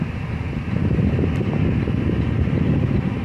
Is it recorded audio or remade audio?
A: recorded